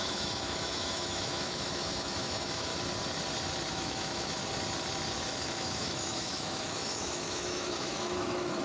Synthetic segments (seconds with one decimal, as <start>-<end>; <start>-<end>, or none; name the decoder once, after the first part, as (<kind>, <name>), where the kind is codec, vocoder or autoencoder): 0.0-2.7 (autoencoder, DAC-VAE); 3.7-4.4; 5.2-8.6